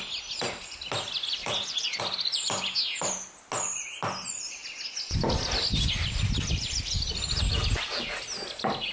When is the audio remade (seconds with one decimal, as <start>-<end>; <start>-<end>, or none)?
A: 1.4-2.0